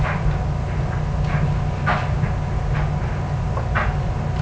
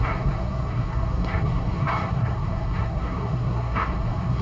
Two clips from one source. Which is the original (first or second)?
first